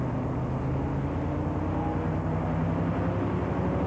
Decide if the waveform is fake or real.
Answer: real